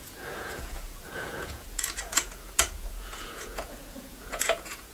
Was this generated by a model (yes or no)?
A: yes